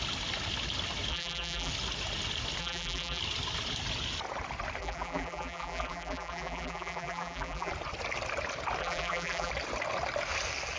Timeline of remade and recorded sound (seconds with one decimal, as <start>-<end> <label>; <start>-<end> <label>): 0.0-1.1 recorded; 1.1-1.7 remade; 1.7-2.6 recorded; 2.6-3.2 remade; 3.2-4.8 recorded; 4.8-7.7 remade; 7.7-8.8 recorded; 8.8-9.5 remade; 9.5-10.8 recorded